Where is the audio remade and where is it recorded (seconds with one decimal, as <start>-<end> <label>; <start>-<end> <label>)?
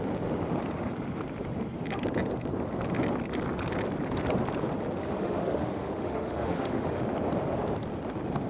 0.0-5.0 recorded; 5.0-7.0 remade; 7.0-8.5 recorded